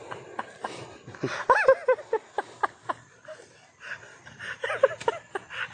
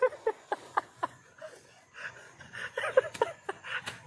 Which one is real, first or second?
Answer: first